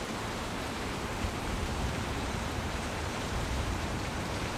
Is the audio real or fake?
fake